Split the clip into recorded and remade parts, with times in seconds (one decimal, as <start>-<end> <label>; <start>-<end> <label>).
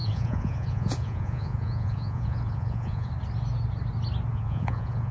0.0-3.1 remade; 3.1-4.3 recorded; 4.3-5.1 remade